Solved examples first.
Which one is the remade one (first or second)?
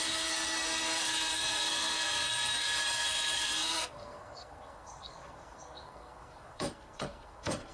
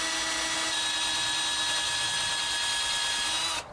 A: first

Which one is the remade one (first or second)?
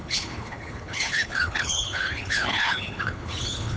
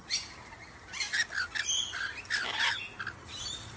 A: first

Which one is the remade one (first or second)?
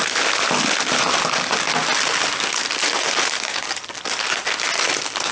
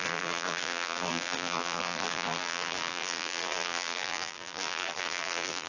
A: second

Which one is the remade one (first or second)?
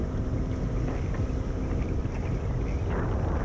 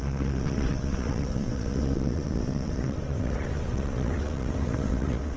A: second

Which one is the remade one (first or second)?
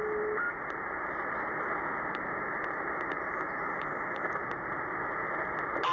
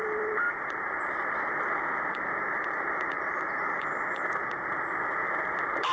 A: second